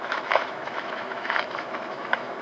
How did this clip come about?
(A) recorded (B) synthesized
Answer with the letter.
B